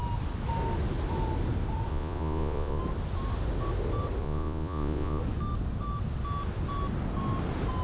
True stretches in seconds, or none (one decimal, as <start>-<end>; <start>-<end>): 0.0-1.9; 2.8-4.2; 5.2-7.8